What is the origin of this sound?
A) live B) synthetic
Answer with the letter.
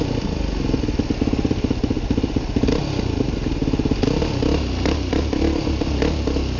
A